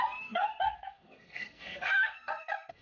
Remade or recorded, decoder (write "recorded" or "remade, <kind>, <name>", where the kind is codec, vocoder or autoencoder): remade, codec, SNAC